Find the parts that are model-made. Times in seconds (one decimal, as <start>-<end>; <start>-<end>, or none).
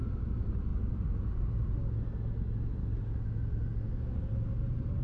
none